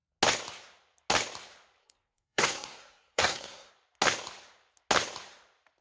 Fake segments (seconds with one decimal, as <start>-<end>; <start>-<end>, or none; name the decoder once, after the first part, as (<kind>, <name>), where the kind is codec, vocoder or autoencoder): 1.8-3.7 (codec, SNAC)